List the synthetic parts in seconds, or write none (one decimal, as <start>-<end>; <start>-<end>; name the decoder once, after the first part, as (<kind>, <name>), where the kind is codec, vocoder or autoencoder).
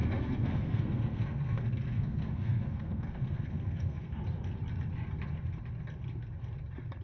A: 0.0-4.2 (codec, SNAC)